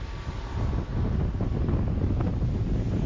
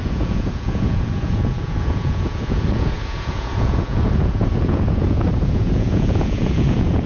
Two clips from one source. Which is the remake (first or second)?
second